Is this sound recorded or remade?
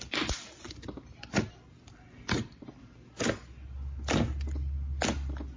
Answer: recorded